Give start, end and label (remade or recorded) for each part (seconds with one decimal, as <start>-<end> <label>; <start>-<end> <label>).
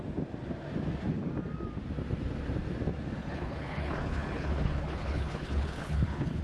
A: 0.0-3.2 recorded; 3.2-6.4 remade